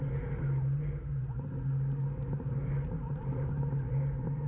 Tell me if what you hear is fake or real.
real